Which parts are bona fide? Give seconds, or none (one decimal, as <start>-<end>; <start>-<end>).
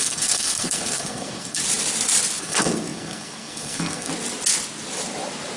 1.6-2.4; 4.1-5.6